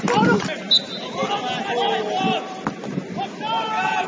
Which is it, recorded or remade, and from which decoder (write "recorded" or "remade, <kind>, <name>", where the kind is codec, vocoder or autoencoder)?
recorded